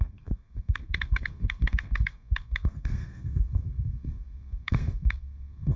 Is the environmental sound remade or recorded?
remade